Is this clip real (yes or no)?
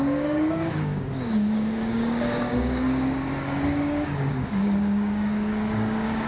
no